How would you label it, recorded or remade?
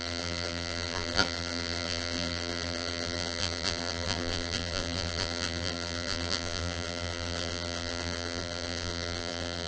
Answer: remade